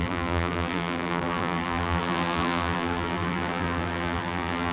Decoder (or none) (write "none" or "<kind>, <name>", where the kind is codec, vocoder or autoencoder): vocoder, BigVGAN v2